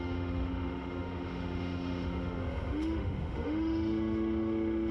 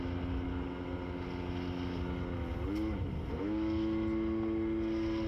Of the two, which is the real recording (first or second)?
second